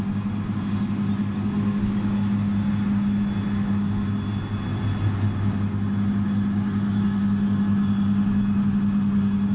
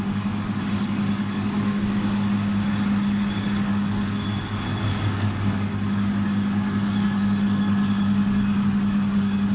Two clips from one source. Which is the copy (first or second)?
second